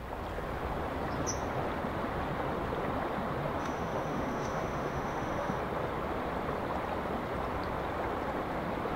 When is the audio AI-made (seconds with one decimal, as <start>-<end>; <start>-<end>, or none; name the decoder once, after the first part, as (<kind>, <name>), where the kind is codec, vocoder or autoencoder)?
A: 3.6-5.6 (autoencoder, DAC-VAE)